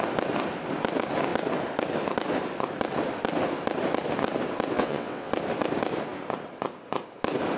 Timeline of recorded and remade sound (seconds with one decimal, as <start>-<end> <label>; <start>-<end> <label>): 0.0-4.7 recorded; 4.7-5.3 remade; 5.3-7.6 recorded